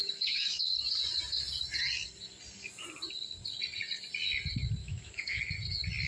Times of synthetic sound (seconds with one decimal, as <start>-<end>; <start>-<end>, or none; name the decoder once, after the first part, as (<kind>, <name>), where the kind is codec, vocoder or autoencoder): 0.0-0.6 (autoencoder, DAC-VAE); 4.8-5.4

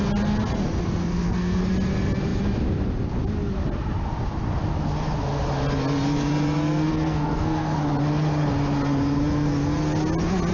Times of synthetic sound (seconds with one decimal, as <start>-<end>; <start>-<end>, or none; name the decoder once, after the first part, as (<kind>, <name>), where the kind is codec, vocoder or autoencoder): 1.0-1.7 (codec, SNAC); 6.9-7.8

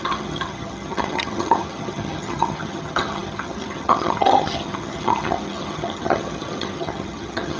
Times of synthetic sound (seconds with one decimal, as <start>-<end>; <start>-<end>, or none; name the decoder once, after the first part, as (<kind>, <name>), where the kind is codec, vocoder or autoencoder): 0.0-7.6 (vocoder, HiFi-GAN)